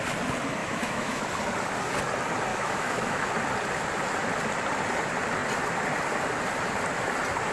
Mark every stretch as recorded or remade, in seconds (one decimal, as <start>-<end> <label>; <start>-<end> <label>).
0.0-0.6 recorded; 0.6-1.2 remade; 1.2-2.5 recorded; 2.5-3.3 remade; 3.3-7.5 recorded